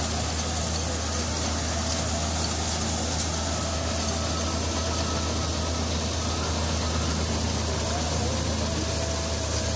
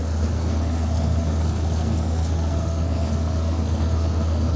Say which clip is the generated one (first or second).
second